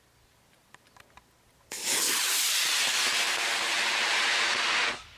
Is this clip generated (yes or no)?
no